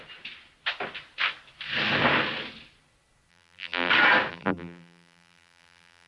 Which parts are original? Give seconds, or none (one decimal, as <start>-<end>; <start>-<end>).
0.0-3.3; 3.9-4.3